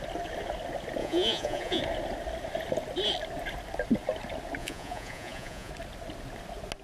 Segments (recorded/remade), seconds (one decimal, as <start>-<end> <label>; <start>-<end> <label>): 0.0-1.0 recorded; 1.0-1.8 remade; 1.8-4.6 recorded; 4.6-5.7 remade; 5.7-6.8 recorded

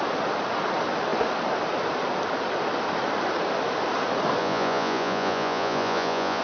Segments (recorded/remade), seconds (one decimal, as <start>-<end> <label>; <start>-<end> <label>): 0.0-4.4 recorded; 4.4-6.4 remade

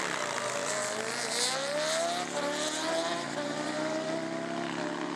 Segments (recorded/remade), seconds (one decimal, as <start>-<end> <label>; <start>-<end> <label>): 0.0-5.2 recorded

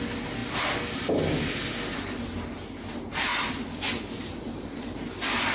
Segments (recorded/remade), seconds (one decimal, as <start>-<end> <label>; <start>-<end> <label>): 0.0-5.5 recorded

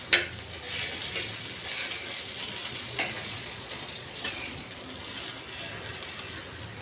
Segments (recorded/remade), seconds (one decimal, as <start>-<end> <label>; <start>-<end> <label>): 0.0-2.6 recorded; 2.6-4.7 remade; 4.7-6.8 recorded

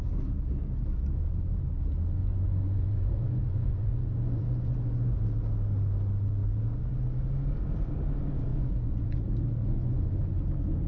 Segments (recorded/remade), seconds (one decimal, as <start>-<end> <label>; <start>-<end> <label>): 0.0-2.2 recorded; 2.2-5.2 remade; 5.2-8.5 recorded; 8.5-9.2 remade; 9.2-9.6 recorded; 9.6-10.1 remade; 10.1-10.9 recorded